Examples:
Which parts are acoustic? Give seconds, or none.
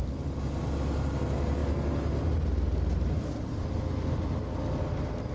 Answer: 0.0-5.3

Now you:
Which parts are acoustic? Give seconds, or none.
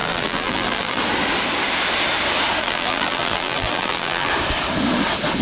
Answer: 1.0-2.6; 4.3-5.4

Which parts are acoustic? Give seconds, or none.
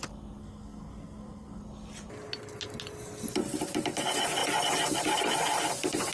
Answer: 0.0-0.4; 1.6-6.1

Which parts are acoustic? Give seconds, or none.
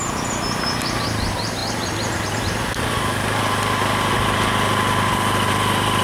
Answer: 0.0-6.0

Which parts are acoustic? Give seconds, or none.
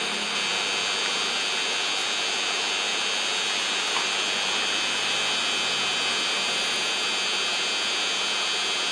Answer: 0.0-8.9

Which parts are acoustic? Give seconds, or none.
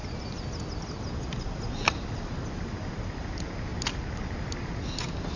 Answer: 0.0-5.4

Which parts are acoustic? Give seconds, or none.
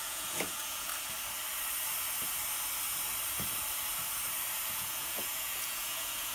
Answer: 0.9-4.7